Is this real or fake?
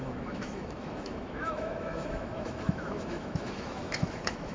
fake